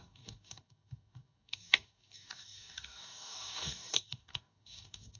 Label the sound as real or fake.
fake